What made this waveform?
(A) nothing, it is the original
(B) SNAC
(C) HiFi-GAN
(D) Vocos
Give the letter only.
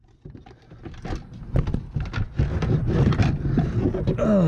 A